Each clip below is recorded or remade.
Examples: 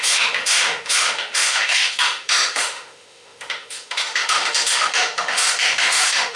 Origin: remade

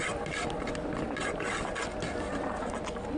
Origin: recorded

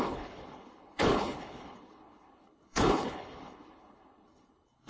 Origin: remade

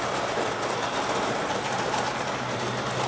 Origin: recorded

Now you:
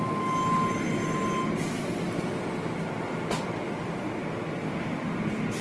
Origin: recorded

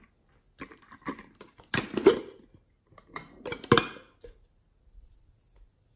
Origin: recorded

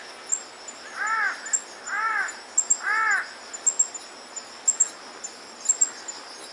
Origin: recorded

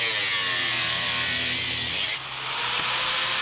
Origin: recorded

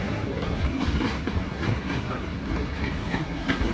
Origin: remade